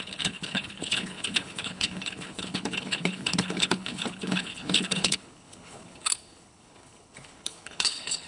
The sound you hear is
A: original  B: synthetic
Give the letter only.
B